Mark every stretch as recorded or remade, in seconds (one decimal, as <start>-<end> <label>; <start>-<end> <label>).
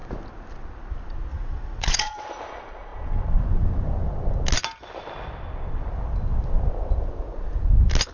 0.0-1.3 recorded; 1.3-2.3 remade; 2.3-8.1 recorded